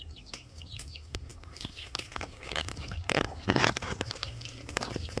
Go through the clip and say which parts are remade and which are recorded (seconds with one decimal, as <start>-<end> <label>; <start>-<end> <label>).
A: 0.0-5.2 remade